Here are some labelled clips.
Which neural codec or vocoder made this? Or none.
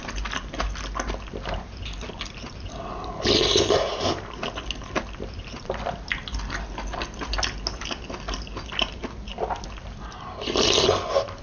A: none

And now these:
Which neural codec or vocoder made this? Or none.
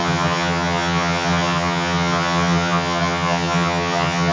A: vocoder, HiFi-GAN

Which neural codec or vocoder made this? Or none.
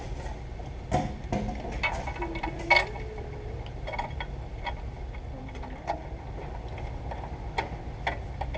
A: none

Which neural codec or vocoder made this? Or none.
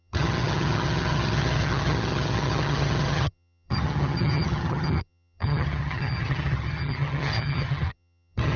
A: vocoder, HiFi-GAN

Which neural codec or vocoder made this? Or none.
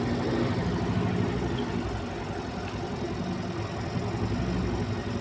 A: none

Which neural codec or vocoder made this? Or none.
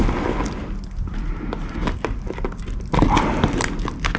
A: none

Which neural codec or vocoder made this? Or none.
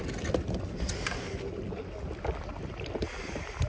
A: none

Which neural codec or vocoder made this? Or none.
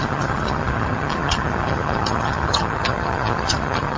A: vocoder, HiFi-GAN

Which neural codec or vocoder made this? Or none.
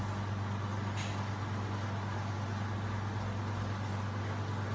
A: none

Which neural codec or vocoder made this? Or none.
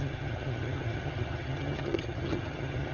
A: vocoder, HiFi-GAN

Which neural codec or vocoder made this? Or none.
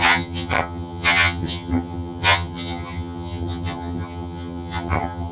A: vocoder, HiFi-GAN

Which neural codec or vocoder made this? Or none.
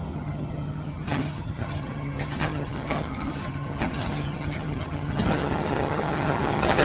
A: vocoder, HiFi-GAN